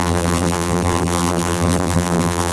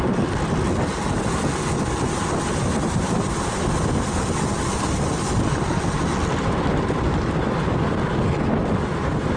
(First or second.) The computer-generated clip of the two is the first